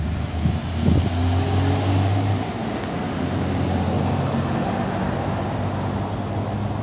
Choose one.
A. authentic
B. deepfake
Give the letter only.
A